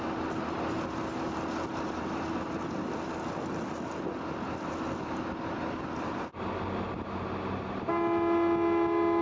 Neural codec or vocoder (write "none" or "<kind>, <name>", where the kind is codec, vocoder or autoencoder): none